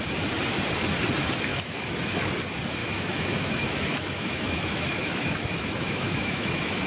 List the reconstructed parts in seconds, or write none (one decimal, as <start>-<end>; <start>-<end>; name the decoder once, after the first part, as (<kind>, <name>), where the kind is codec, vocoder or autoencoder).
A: 1.5-2.3 (autoencoder, DAC-VAE); 2.8-6.9